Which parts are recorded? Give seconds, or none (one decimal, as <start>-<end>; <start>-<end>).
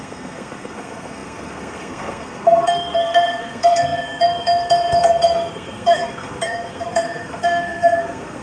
none